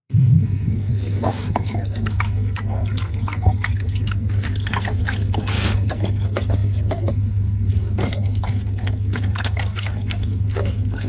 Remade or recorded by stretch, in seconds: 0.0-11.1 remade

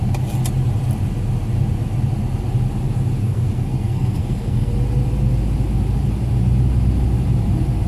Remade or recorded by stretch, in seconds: 0.0-3.2 recorded; 3.2-4.7 remade; 4.7-7.9 recorded

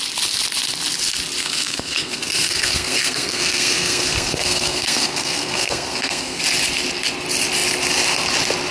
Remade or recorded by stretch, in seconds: 0.0-1.4 recorded; 1.4-6.4 remade; 6.4-8.7 recorded

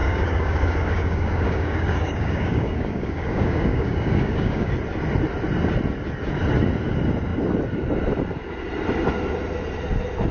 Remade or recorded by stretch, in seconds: 0.0-4.7 remade; 4.7-10.3 recorded

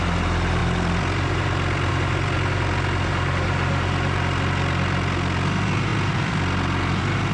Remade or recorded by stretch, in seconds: 0.0-7.3 recorded

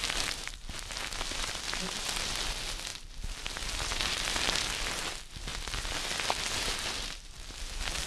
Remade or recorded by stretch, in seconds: 0.0-8.1 recorded